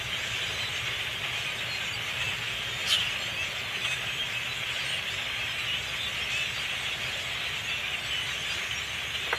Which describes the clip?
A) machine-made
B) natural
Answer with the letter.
B